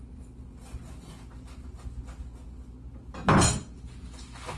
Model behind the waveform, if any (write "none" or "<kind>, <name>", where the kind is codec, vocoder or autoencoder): none